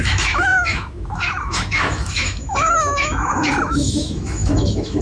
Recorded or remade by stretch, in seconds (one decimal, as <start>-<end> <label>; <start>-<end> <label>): 0.0-5.0 remade